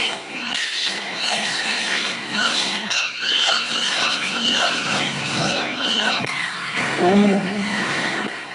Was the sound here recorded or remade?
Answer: remade